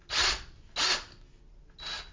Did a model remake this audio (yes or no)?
no